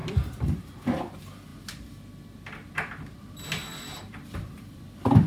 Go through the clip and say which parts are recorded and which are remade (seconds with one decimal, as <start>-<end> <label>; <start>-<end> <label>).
0.0-3.6 recorded; 3.6-5.3 remade